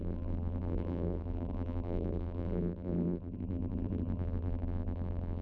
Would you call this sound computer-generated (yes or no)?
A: yes